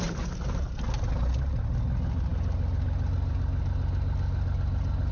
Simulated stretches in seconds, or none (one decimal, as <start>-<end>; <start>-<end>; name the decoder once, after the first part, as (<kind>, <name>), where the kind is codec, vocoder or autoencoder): none